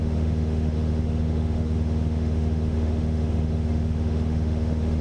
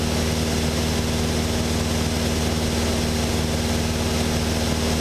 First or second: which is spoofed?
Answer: first